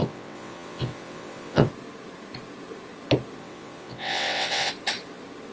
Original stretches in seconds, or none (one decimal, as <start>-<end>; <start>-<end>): 1.7-3.4; 4.7-5.5